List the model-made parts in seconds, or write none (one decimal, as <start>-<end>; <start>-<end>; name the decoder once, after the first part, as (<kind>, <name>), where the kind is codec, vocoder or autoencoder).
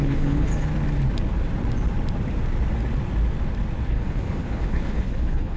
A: 0.0-0.5 (codec, HILCodec); 3.9-5.6